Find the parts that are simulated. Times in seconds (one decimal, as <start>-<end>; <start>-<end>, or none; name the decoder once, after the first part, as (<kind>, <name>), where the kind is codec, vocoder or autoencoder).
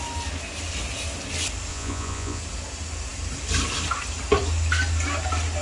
1.7-2.4 (vocoder, Vocos)